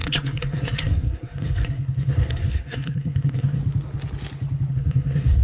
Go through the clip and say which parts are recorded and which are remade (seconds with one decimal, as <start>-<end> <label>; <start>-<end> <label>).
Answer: 0.0-3.6 remade; 3.6-4.7 recorded; 4.7-5.4 remade